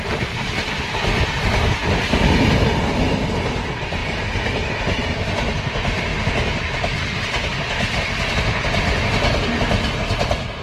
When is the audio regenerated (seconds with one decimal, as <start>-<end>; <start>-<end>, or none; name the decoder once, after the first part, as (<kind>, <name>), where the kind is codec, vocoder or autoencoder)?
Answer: 0.0-1.8 (vocoder, BigVGAN v2); 2.8-6.1; 8.3-10.6